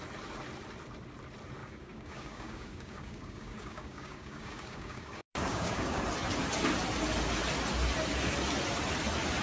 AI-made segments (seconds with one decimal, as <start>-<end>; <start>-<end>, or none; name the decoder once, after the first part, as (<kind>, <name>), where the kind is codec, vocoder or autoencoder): 1.6-6.0 (codec, DAC)